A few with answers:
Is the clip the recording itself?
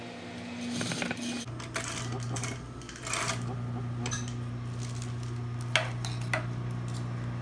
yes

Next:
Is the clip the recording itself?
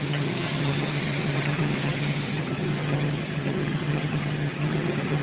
no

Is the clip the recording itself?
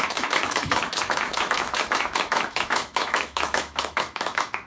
no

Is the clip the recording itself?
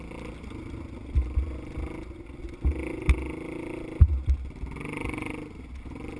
yes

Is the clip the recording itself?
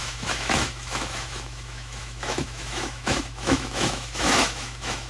no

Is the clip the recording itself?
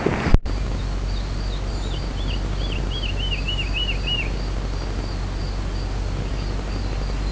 yes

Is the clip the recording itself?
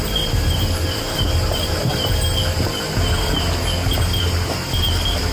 yes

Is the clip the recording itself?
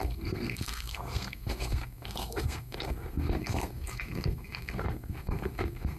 no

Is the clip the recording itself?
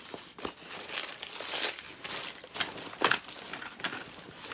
yes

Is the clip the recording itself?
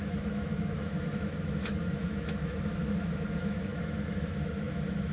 no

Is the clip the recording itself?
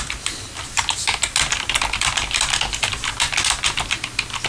yes